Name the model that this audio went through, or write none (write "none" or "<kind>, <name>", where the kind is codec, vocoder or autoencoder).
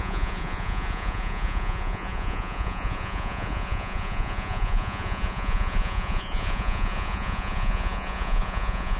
vocoder, Vocos